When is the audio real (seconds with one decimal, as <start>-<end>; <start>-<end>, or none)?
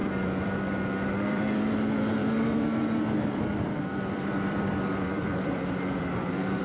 1.7-2.2